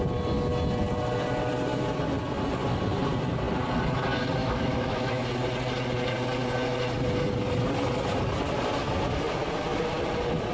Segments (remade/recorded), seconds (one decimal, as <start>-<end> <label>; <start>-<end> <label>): 0.0-4.4 recorded; 4.4-5.3 remade; 5.3-10.5 recorded